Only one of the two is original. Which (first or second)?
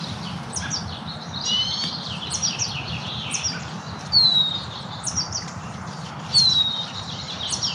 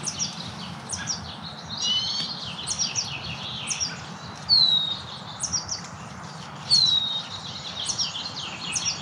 second